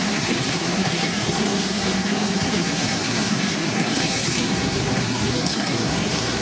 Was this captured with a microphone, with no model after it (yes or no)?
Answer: no